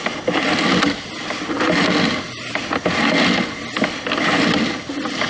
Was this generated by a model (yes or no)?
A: no